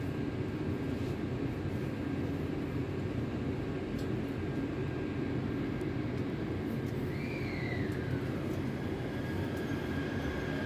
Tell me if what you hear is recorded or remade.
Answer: recorded